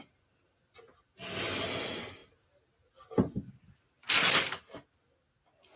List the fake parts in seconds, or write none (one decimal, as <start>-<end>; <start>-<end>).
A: none